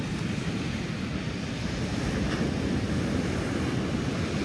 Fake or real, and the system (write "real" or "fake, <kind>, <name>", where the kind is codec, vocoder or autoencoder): real